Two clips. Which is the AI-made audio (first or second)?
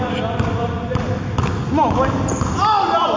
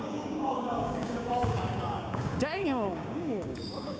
second